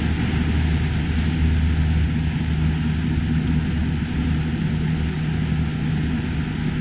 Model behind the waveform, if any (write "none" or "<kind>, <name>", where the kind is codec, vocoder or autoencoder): none